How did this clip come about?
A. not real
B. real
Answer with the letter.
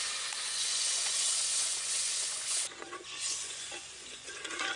A